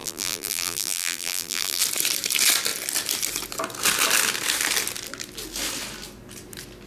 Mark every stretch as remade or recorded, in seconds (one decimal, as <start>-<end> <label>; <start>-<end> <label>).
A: 0.0-1.8 remade; 1.8-6.9 recorded